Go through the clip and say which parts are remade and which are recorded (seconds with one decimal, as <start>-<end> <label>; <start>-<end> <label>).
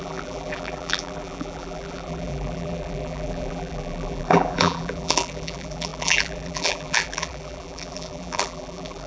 0.0-9.1 remade